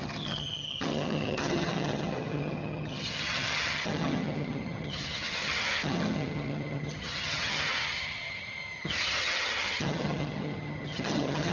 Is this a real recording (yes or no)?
no